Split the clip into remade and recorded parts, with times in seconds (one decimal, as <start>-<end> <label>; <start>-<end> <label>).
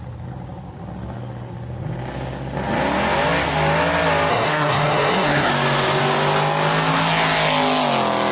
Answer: 0.0-4.3 recorded; 4.3-5.5 remade; 5.5-8.3 recorded